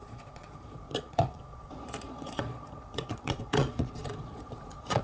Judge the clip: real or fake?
fake